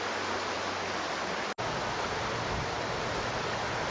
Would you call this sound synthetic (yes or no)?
no